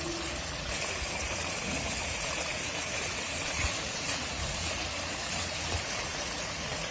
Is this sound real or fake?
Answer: fake